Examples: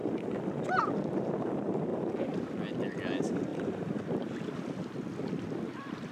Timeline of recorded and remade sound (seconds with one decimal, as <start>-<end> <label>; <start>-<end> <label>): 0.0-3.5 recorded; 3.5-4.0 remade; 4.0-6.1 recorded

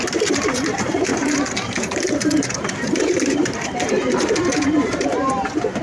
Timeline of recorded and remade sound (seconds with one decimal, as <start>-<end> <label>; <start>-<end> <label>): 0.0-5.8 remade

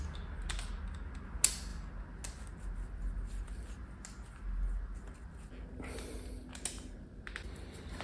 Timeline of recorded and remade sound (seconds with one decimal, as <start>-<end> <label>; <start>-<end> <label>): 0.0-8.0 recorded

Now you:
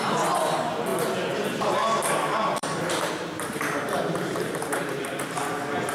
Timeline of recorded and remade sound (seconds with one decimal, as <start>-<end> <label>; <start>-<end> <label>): 0.0-2.6 recorded; 2.6-5.2 remade; 5.2-5.9 recorded

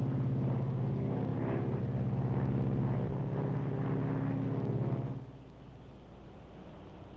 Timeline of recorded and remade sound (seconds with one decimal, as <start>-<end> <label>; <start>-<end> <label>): 0.0-1.3 recorded; 1.3-1.8 remade; 1.8-7.2 recorded